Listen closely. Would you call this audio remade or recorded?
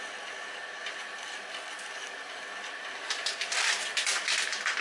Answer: remade